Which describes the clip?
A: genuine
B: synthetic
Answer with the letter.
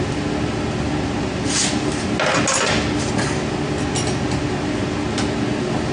A